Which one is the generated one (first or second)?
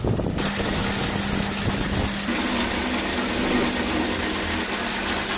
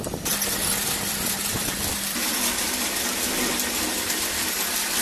second